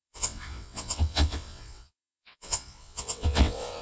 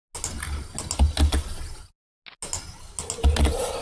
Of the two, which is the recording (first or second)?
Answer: second